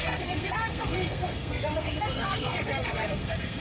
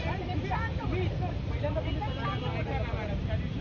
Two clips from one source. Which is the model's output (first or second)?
first